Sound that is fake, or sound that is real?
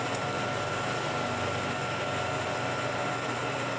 real